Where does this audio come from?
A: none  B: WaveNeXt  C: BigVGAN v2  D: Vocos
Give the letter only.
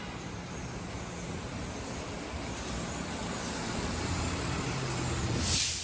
A